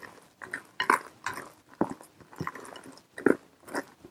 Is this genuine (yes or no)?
yes